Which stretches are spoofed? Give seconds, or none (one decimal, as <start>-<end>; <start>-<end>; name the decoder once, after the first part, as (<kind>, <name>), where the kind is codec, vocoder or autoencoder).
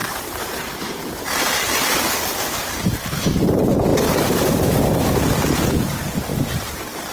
0.0-1.8 (vocoder, BigVGAN v2); 2.3-7.1